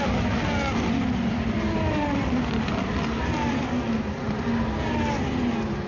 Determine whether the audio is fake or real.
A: real